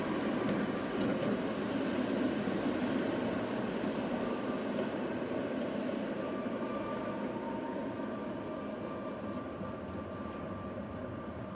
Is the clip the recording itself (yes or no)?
yes